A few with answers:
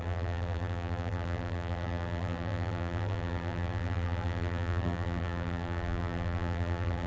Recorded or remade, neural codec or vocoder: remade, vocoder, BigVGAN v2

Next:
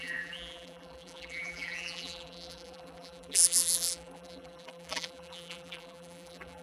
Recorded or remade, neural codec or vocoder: remade, vocoder, BigVGAN v2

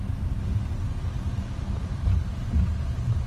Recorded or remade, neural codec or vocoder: recorded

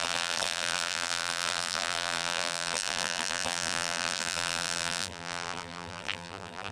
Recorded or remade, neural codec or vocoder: remade, vocoder, BigVGAN v2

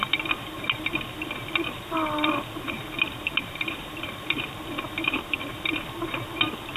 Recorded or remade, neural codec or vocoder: recorded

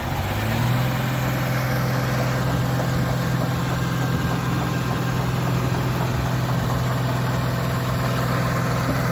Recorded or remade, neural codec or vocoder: recorded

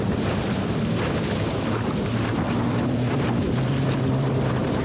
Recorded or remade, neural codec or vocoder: remade, vocoder, BigVGAN v2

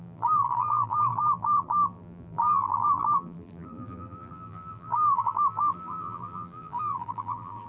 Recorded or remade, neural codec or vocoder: remade, vocoder, BigVGAN v2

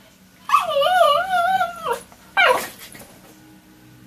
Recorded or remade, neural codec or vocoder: recorded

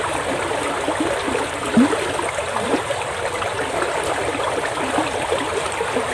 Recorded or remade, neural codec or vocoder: recorded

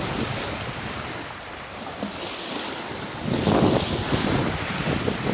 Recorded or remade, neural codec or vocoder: recorded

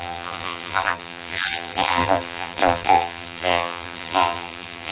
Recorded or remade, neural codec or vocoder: remade, vocoder, BigVGAN v2